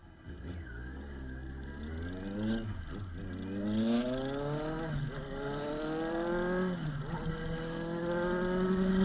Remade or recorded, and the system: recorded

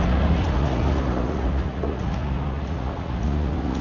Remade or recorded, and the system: remade, vocoder, Vocos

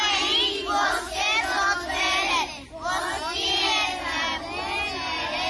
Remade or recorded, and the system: recorded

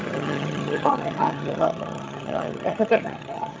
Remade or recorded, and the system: remade, vocoder, HiFi-GAN